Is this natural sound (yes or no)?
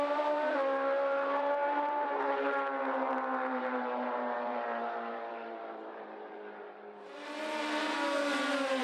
no